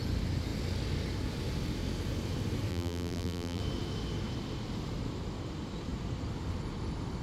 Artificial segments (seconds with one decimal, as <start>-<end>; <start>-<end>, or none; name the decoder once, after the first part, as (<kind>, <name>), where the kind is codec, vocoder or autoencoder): 2.7-3.6 (vocoder, BigVGAN v2)